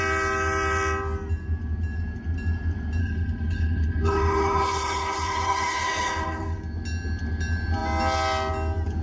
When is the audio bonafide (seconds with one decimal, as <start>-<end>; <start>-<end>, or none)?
0.0-3.0; 6.6-9.0